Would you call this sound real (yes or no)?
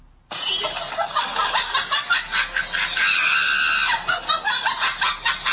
yes